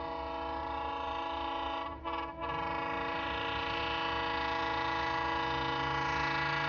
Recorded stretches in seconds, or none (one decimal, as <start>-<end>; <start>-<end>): 0.0-0.6; 2.0-2.4; 3.8-6.7